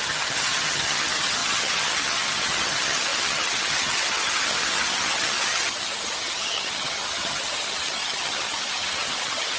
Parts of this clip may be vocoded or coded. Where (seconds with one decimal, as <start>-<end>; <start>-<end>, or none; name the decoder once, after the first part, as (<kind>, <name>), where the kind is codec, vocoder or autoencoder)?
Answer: 0.0-9.6 (vocoder, HiFi-GAN)